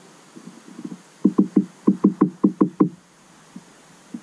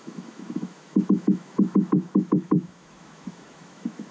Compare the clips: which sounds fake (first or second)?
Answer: second